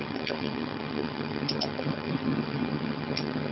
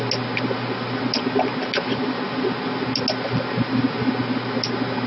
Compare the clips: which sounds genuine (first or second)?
second